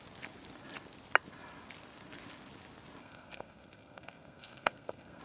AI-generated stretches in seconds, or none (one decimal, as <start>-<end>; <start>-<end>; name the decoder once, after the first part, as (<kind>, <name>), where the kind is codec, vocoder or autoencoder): 3.0-5.2 (codec, SNAC)